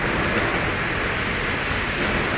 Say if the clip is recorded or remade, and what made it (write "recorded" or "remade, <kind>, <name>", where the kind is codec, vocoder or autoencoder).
recorded